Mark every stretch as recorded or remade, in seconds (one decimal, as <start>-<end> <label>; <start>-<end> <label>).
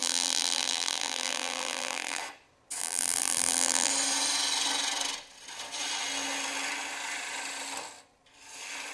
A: 0.0-2.2 remade; 2.2-2.8 recorded; 2.8-3.9 remade; 3.9-8.9 recorded